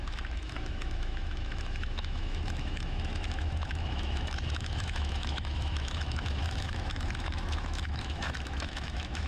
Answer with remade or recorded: remade